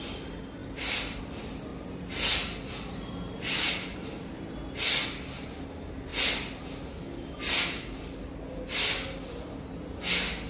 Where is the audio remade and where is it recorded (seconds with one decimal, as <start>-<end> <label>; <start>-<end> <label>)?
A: 0.0-10.5 recorded